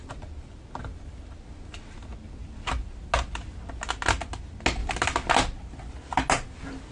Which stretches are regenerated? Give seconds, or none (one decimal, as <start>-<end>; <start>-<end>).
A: none